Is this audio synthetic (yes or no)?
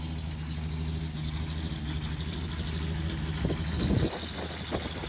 no